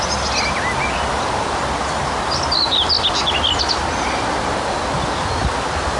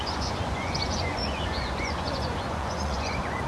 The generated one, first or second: second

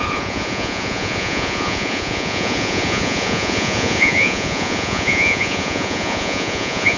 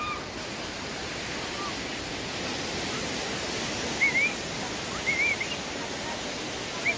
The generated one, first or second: first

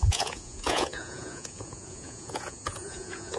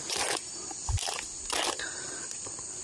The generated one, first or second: first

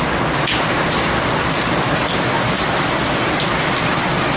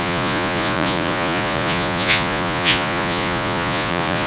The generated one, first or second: second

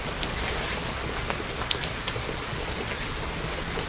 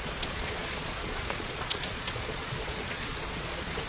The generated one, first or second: second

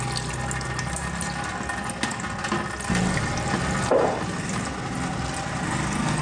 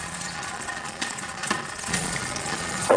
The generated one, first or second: second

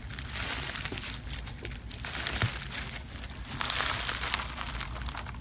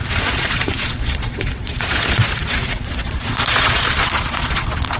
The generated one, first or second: second